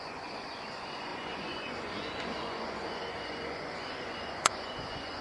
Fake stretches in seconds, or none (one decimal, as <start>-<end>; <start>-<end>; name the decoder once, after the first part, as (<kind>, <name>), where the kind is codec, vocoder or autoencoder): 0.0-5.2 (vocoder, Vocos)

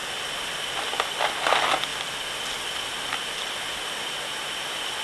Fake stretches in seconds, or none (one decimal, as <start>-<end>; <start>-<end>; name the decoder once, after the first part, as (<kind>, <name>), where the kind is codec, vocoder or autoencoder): none

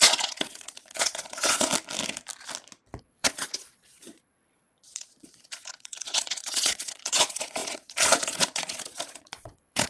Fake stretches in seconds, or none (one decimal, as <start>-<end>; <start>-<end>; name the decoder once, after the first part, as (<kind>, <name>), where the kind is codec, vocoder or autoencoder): 0.0-1.7 (vocoder, Vocos); 3.0-9.9

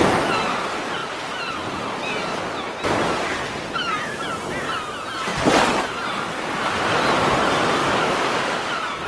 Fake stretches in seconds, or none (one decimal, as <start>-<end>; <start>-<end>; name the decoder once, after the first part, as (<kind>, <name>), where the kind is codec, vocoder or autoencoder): 7.8-8.7 (codec, DAC)

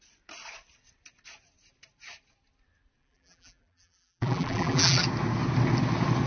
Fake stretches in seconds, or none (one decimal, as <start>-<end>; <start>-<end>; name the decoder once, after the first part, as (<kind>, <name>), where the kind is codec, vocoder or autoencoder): 3.0-5.0 (vocoder, BigVGAN v2)